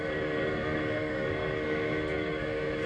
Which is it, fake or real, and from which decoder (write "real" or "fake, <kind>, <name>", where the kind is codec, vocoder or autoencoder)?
fake, codec, SNAC